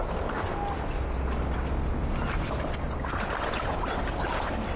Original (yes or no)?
yes